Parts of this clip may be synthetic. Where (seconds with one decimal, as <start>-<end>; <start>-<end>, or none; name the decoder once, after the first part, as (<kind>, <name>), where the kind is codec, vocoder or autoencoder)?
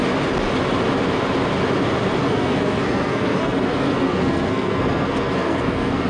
2.2-6.1 (codec, SNAC)